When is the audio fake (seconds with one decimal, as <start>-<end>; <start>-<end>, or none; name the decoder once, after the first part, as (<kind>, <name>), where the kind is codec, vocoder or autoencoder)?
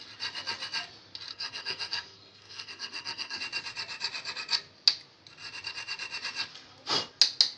1.3-3.4 (codec, SNAC)